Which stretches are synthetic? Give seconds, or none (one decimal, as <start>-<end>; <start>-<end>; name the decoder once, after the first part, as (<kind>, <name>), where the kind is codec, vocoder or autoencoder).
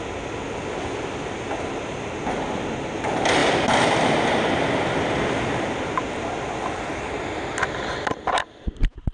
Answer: none